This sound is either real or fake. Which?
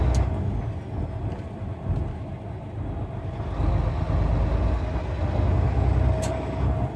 real